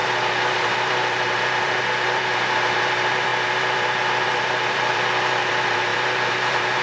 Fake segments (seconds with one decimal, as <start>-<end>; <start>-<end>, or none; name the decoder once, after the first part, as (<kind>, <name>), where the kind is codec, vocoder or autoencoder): 0.0-6.8 (vocoder, BigVGAN v2)